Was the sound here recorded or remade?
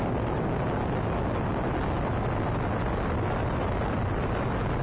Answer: recorded